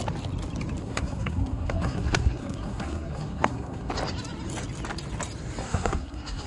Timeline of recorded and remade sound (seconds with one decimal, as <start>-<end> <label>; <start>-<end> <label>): 0.0-0.8 recorded; 0.8-3.9 remade; 3.9-5.6 recorded; 5.6-6.5 remade